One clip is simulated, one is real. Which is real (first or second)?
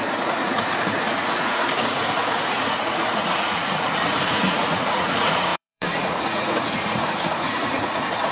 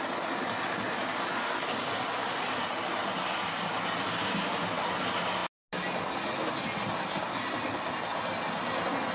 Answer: second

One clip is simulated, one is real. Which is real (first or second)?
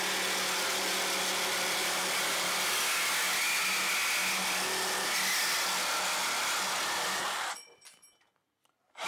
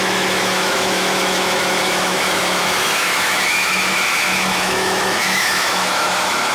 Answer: first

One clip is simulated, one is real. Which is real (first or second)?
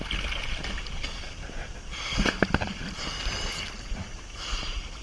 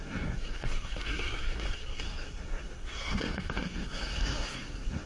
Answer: first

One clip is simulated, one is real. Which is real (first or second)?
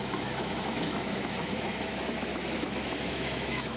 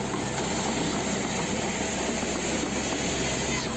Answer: second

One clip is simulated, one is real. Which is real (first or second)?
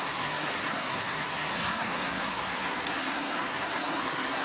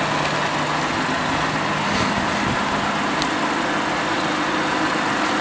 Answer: second